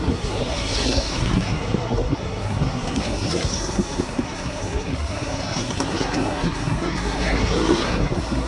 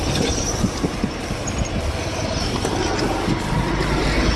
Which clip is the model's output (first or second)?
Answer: first